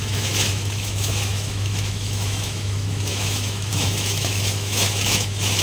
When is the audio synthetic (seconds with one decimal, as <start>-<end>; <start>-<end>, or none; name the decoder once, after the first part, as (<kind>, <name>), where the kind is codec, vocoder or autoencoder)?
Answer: 0.0-5.6 (autoencoder, DAC-VAE)